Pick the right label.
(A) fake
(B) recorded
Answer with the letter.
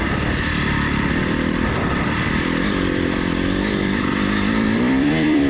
A